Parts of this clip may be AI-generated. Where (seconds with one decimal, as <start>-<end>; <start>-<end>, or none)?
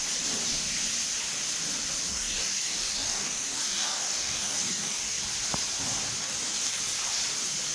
2.1-5.2; 6.2-6.8